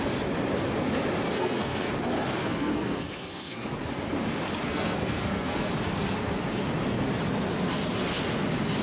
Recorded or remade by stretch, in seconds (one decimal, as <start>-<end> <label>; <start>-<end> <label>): 0.0-1.3 recorded; 1.3-1.9 remade; 1.9-2.4 recorded; 2.4-3.7 remade; 3.7-4.7 recorded; 4.7-5.7 remade; 5.7-8.8 recorded

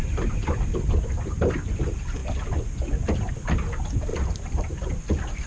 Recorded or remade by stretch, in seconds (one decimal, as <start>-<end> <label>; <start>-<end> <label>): 0.0-4.1 recorded; 4.1-4.9 remade; 4.9-5.5 recorded